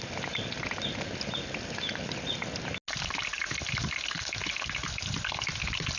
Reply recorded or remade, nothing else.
recorded